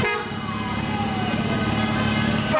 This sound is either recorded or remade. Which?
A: recorded